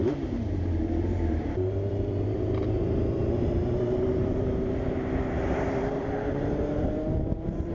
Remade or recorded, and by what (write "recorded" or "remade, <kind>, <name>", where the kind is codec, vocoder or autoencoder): remade, vocoder, BigVGAN v2